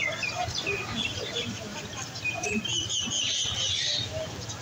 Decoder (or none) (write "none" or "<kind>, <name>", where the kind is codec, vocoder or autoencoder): none